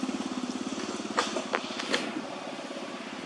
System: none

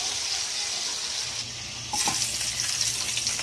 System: none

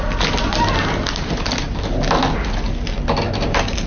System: none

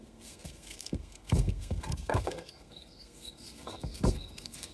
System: codec, SNAC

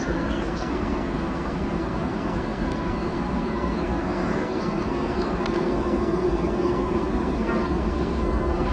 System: codec, SNAC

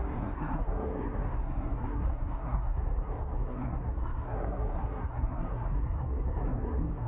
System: codec, SNAC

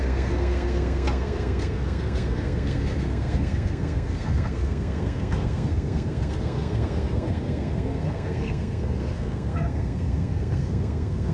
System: codec, SNAC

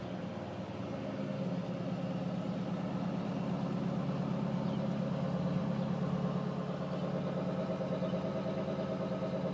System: none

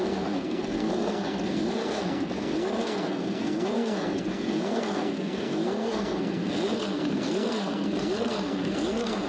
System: codec, SNAC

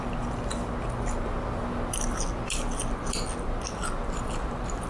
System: none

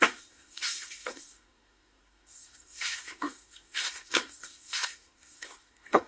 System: codec, SNAC